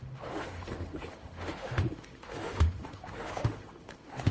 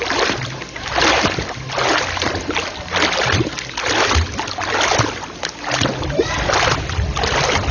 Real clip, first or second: second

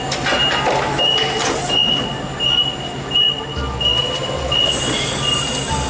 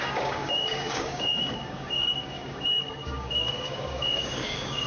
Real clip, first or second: first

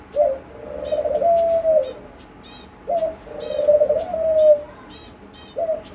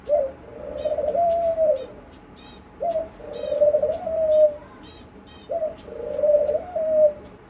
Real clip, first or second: first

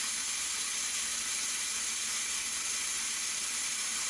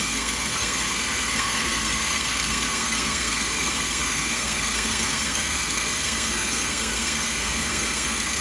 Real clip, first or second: first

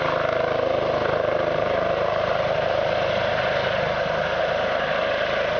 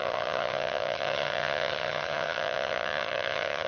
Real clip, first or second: first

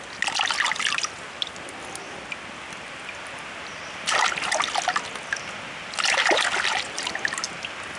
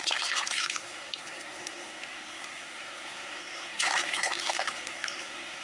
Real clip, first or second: first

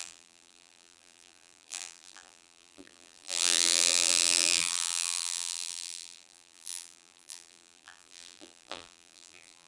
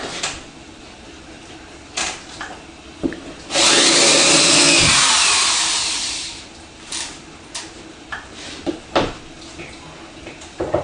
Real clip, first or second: second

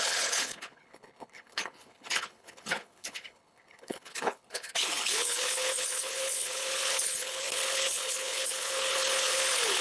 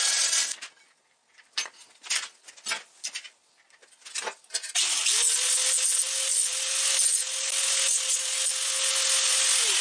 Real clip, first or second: second